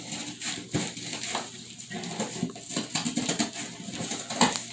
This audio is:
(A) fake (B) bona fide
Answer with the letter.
B